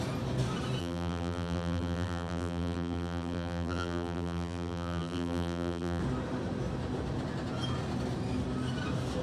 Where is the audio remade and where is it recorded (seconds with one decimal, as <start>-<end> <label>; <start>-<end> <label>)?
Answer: 0.0-0.8 recorded; 0.8-6.0 remade; 6.0-9.2 recorded